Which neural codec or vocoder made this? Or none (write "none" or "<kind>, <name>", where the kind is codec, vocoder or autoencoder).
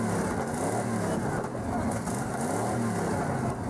none